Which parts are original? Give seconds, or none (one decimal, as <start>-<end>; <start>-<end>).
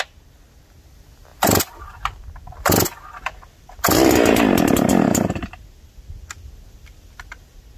0.0-7.8